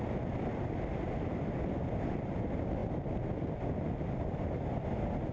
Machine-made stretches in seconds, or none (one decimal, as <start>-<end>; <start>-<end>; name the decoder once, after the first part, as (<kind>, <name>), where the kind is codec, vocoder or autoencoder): none